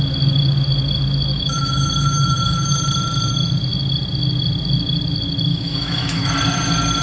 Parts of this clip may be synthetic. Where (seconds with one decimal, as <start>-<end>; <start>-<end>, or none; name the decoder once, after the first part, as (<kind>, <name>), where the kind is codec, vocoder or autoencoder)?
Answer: 1.3-2.7 (autoencoder, DAC-VAE); 5.5-6.3